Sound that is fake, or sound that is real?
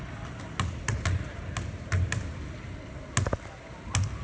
real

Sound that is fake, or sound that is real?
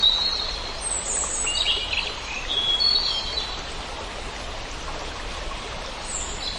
real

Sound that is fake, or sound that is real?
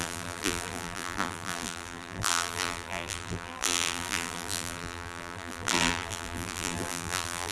fake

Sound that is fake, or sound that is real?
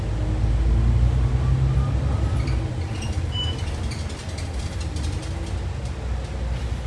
real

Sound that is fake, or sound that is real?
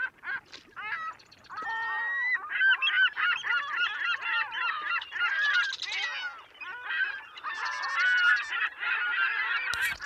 real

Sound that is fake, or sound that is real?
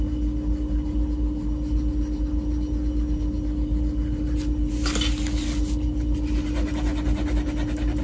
real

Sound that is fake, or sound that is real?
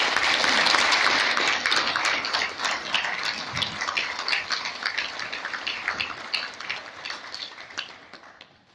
real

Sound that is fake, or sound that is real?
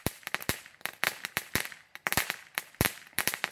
fake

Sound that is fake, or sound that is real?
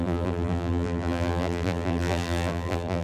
fake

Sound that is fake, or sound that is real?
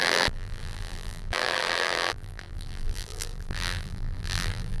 fake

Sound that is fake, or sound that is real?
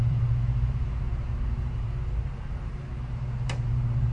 fake